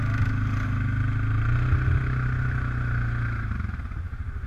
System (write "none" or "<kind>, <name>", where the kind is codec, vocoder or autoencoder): none